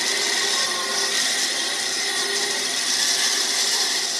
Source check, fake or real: real